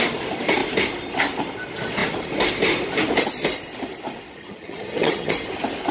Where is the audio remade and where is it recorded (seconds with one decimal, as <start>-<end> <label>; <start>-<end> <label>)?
0.0-4.4 recorded; 4.4-5.3 remade; 5.3-5.9 recorded